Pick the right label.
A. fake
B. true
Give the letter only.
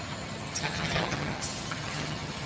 A